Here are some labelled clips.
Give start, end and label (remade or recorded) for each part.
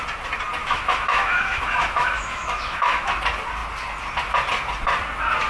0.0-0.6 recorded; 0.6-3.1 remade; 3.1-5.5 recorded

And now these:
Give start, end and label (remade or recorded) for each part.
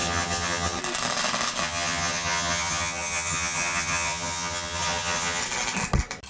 0.0-0.8 remade; 0.8-1.6 recorded; 1.6-5.4 remade; 5.4-6.3 recorded